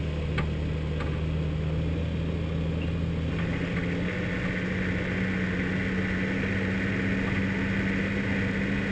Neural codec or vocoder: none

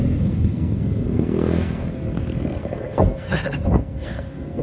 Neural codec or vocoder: codec, SNAC